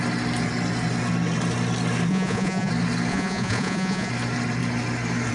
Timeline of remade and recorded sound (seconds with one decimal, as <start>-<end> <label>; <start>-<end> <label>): 0.0-2.1 recorded; 2.1-2.7 remade; 2.7-3.1 recorded; 3.1-4.1 remade; 4.1-5.3 recorded